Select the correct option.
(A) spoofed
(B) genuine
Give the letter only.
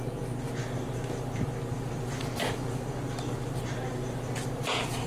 B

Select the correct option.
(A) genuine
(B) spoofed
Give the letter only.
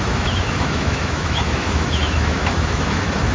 B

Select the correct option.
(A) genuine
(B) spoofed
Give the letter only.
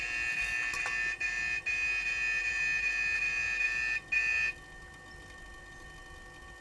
A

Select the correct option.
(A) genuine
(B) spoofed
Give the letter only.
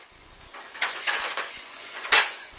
B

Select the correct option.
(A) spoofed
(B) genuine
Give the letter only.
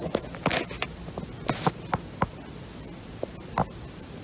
B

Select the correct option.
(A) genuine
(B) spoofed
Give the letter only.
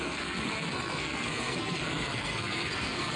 B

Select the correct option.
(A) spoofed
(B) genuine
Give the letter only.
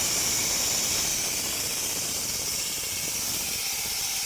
A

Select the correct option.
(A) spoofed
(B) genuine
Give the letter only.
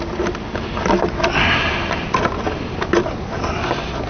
B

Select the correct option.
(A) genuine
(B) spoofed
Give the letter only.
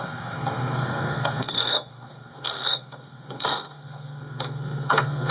B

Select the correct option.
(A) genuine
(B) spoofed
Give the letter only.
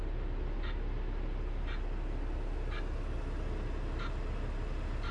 A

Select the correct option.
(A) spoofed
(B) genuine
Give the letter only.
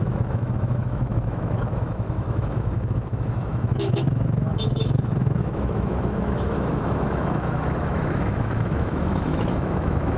A